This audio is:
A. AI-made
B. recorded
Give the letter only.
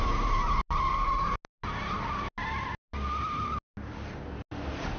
B